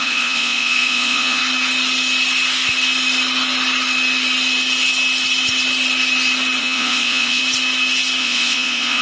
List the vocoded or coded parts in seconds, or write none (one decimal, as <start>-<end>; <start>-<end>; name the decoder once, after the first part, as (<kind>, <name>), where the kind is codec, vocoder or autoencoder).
0.0-1.4 (vocoder, Vocos); 6.6-7.4; 8.2-9.0